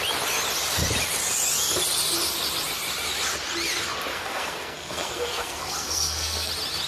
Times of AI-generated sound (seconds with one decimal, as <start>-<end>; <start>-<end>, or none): 4.1-6.5